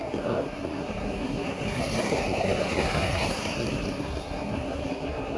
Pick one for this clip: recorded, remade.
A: remade